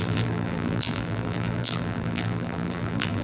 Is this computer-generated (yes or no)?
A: yes